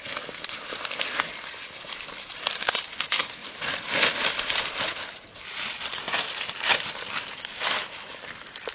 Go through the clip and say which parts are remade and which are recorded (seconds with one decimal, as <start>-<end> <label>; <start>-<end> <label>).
0.0-8.7 recorded